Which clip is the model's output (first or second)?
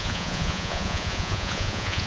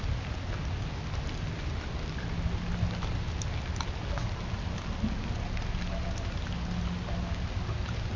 first